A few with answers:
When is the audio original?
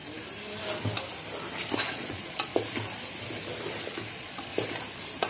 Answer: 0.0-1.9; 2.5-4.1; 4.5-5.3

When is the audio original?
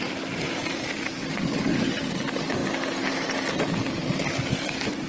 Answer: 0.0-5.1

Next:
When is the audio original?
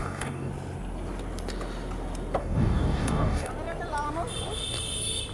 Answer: 0.5-2.4; 3.5-5.3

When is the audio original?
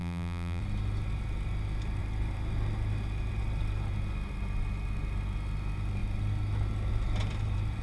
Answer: 0.6-7.8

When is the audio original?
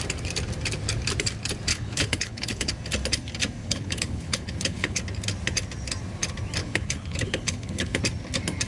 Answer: 0.0-1.7; 2.7-3.6; 5.0-6.6; 8.0-8.7